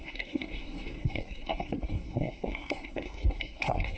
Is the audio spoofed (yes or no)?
yes